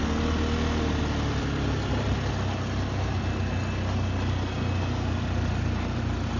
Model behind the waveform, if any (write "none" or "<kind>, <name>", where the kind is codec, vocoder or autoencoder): none